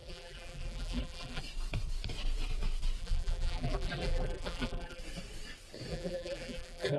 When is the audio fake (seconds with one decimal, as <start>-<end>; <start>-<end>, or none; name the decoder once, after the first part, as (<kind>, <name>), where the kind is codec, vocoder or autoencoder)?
0.0-1.4 (vocoder, BigVGAN v2); 3.0-5.0; 5.9-7.0